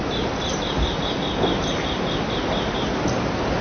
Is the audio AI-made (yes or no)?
no